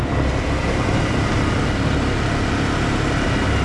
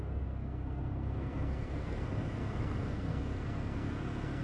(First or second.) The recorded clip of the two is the first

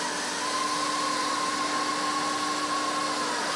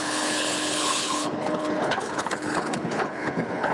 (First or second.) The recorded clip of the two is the first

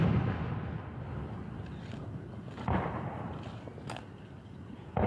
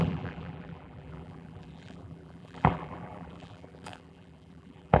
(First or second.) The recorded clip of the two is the first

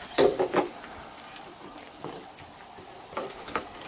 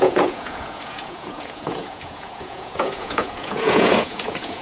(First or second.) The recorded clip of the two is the first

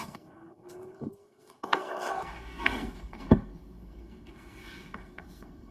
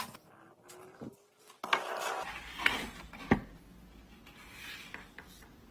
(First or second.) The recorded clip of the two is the second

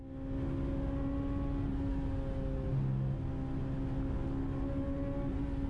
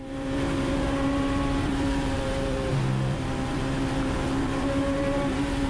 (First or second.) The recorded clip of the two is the first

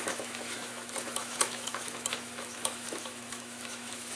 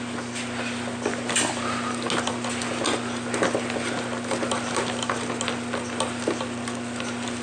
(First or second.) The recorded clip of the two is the second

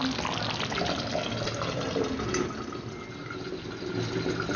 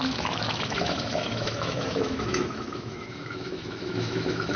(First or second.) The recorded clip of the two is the first